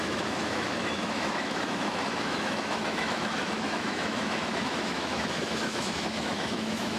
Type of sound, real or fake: fake